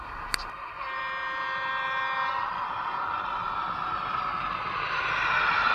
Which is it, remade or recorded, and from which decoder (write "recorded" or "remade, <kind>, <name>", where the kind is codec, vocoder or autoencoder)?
recorded